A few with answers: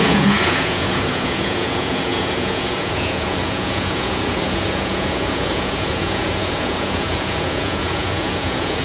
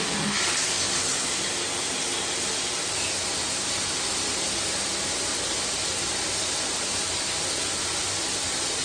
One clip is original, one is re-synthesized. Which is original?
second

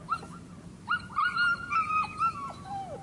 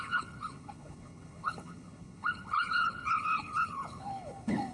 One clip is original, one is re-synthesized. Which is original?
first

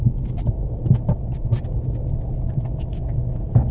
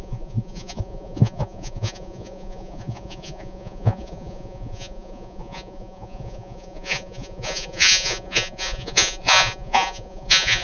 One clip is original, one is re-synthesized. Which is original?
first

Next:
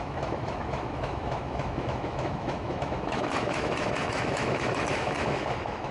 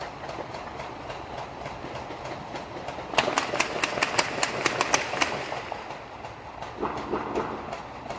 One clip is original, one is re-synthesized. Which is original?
second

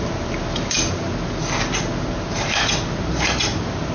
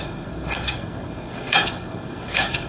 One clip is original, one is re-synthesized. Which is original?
first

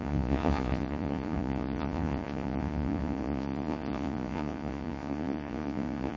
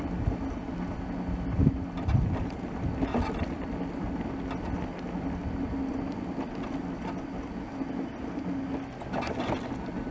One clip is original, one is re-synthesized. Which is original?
second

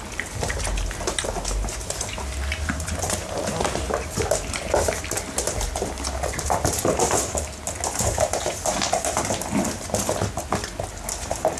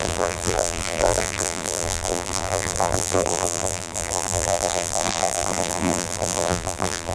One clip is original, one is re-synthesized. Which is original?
first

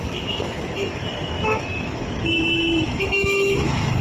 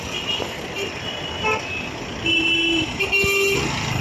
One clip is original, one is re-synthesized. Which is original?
second